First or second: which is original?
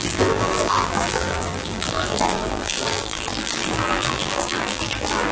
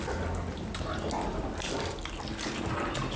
second